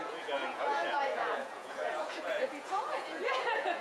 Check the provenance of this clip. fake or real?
fake